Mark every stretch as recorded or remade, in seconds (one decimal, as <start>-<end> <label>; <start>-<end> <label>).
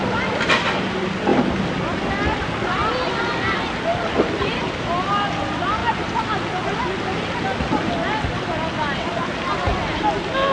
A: 0.0-10.5 recorded